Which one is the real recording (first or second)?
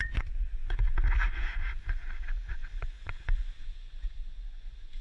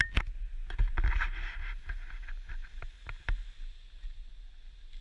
second